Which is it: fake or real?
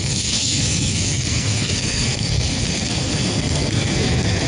fake